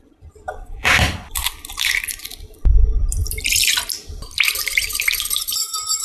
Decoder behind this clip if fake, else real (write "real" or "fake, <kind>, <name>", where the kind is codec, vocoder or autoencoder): fake, vocoder, BigVGAN v2